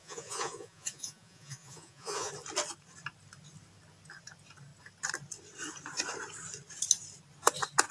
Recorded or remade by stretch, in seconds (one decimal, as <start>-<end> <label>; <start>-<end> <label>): 0.0-2.3 remade; 2.3-7.9 recorded